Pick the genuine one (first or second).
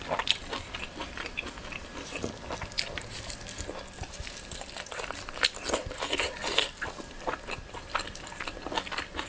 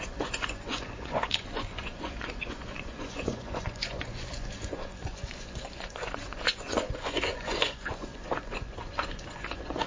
first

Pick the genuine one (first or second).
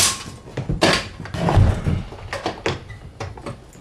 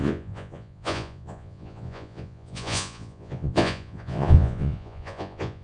first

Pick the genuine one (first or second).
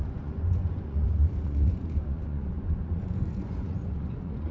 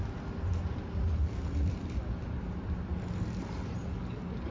second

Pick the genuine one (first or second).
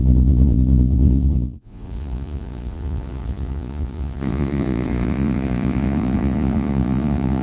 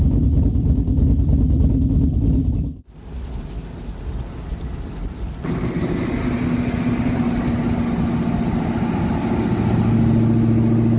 second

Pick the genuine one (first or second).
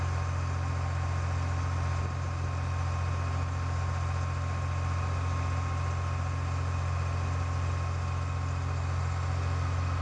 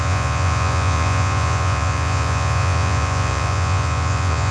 first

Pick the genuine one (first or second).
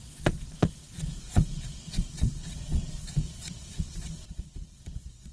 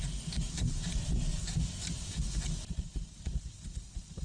second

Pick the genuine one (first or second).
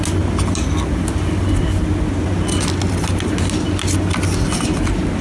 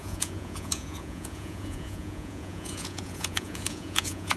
first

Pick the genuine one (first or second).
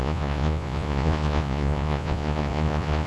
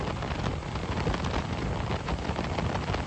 second